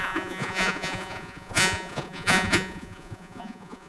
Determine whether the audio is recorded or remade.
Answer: remade